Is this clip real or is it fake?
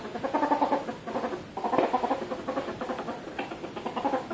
real